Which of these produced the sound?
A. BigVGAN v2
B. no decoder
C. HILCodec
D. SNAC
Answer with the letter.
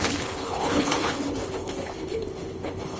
C